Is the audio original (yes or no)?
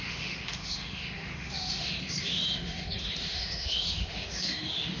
no